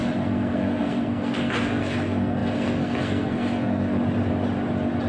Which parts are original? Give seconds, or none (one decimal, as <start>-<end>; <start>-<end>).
4.0-5.1